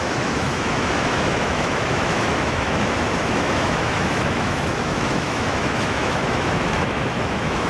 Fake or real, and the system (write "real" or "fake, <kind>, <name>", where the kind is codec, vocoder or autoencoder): fake, autoencoder, DAC-VAE